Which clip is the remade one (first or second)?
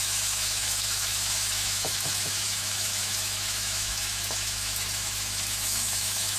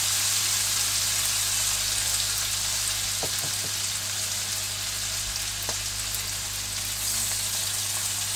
first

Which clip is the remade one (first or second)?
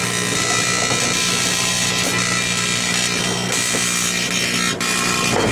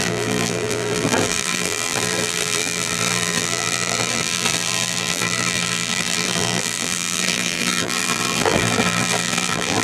second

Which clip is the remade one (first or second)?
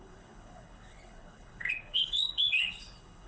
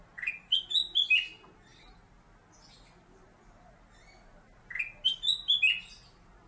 first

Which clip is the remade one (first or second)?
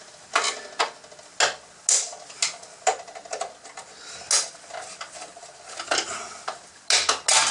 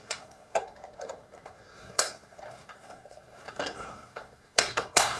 second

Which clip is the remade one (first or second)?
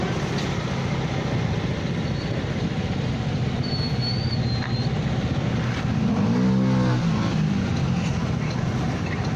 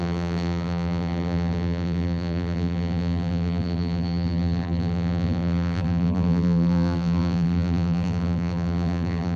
second